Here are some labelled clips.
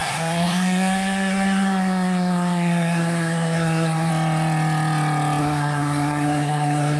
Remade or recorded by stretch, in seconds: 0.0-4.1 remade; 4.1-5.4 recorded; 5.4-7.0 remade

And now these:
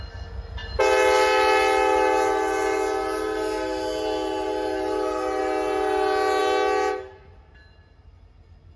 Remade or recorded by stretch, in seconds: 0.0-8.8 recorded

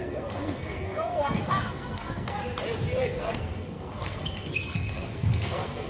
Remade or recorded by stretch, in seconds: 0.0-2.4 remade; 2.4-3.0 recorded; 3.0-5.9 remade

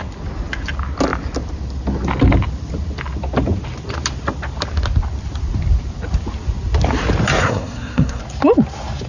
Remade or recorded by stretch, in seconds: 0.0-7.4 recorded; 7.4-8.2 remade; 8.2-9.1 recorded